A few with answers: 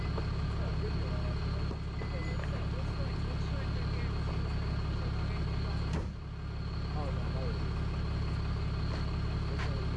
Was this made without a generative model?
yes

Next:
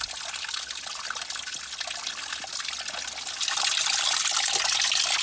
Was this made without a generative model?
yes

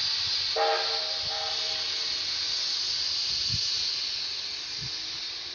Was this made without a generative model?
yes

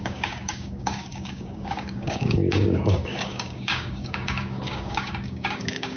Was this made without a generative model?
no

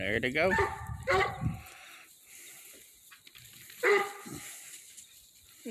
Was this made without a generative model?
yes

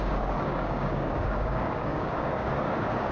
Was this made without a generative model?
no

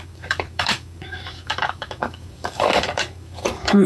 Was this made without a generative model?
no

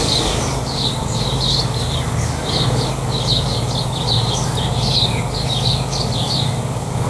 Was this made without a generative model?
no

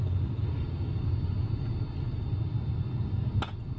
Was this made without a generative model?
yes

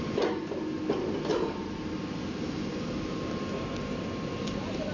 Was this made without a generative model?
yes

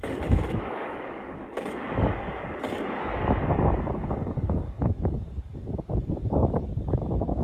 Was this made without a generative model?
no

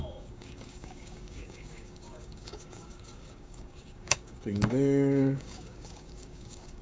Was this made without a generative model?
no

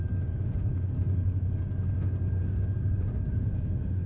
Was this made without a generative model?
no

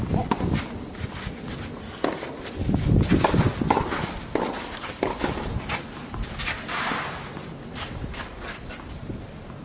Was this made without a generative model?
yes